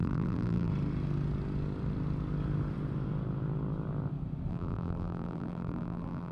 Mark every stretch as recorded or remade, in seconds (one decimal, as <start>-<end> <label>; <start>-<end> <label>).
0.0-0.7 remade; 0.7-4.5 recorded; 4.5-6.3 remade